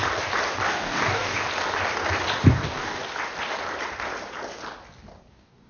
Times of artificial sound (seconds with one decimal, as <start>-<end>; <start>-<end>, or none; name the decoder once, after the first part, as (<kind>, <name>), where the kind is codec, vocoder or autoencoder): 0.7-1.4 (codec, DAC); 2.5-3.0; 5.3-5.7